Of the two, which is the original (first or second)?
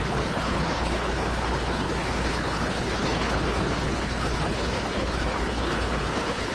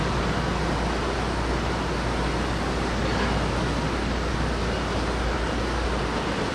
second